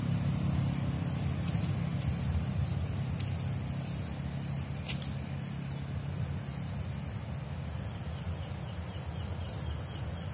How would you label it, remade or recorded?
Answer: recorded